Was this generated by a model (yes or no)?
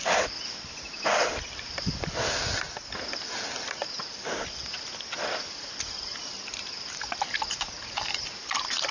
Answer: no